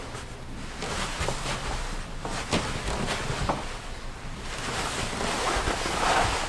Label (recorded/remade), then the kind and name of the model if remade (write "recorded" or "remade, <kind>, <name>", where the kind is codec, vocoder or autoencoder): recorded